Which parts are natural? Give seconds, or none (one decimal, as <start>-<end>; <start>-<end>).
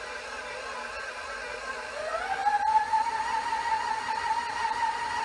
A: 0.0-5.2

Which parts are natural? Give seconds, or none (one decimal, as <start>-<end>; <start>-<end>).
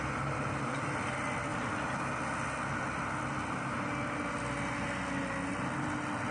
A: 0.0-6.3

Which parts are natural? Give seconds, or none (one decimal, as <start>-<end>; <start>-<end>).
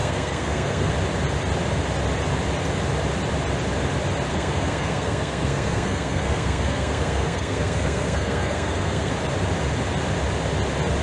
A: 0.9-4.3; 9.1-11.0